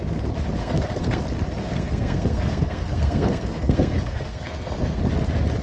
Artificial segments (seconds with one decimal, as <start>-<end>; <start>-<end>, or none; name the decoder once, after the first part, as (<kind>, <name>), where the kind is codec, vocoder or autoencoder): 0.6-1.2 (codec, SNAC); 1.6-5.0

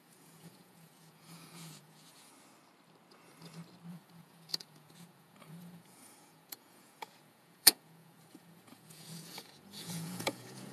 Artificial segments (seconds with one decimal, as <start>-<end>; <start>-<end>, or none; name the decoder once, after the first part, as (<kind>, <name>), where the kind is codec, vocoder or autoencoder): 0.0-2.3 (vocoder, Vocos); 3.9-10.7

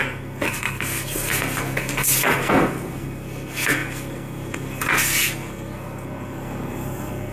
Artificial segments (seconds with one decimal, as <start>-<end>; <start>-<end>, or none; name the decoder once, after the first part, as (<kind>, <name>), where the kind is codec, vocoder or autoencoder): 0.0-7.3 (codec, SNAC)

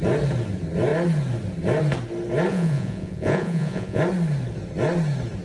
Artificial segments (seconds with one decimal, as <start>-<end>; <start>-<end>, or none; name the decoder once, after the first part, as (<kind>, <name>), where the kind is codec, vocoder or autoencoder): 2.5-4.0 (vocoder, Vocos)

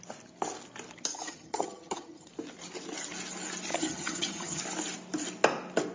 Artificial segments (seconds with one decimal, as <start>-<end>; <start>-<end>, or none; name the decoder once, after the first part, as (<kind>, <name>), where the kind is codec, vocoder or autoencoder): 1.1-2.3 (vocoder, HiFi-GAN); 3.7-4.6

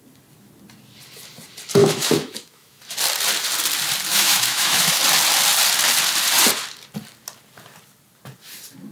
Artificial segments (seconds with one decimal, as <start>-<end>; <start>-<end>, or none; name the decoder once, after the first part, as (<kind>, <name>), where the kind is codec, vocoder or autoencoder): 1.8-2.8 (autoencoder, DAC-VAE); 4.1-5.0